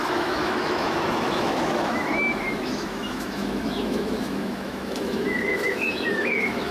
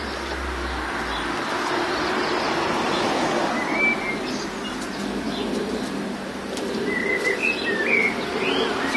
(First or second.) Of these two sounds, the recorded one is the second